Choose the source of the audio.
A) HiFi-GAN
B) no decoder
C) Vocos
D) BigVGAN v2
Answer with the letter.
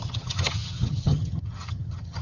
A